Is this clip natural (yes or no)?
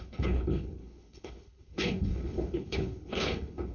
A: no